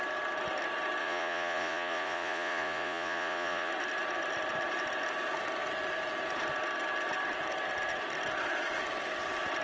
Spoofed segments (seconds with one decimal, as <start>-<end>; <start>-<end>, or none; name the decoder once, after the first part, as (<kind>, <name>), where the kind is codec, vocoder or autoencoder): 1.0-3.7 (vocoder, Vocos)

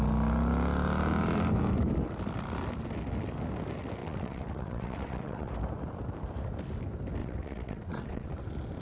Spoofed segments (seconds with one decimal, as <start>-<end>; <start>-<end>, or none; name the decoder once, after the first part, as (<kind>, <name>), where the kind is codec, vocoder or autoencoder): 4.0-5.5 (vocoder, WaveNeXt); 7.2-8.4

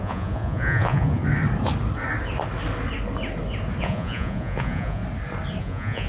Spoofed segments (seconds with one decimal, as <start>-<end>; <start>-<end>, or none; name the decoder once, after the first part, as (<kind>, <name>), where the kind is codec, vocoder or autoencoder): 0.0-1.2 (vocoder, Vocos); 3.8-5.0; 5.6-6.1